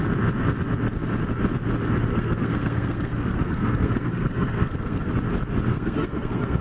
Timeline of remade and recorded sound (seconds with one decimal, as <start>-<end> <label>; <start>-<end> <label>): 0.0-2.1 recorded; 2.1-5.1 remade; 5.1-5.7 recorded; 5.7-6.6 remade